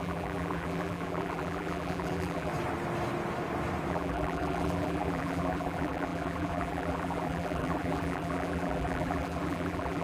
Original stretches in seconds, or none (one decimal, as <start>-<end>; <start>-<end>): 2.5-3.9